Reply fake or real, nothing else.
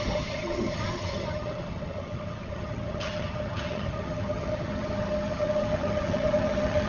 fake